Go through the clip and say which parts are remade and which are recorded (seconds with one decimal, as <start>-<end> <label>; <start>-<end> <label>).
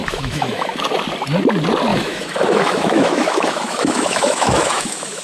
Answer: 0.0-0.8 remade; 0.8-1.9 recorded; 1.9-5.2 remade